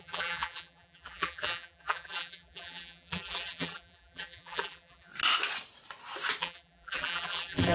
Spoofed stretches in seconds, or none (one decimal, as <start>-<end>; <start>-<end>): 0.0-5.1; 6.4-7.7